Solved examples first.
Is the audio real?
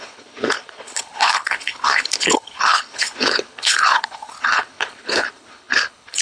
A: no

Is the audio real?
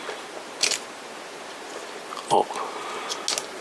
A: yes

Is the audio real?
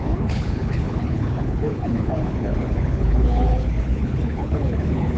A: no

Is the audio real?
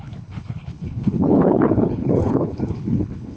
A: no